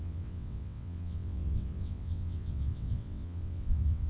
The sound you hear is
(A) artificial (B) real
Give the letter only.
A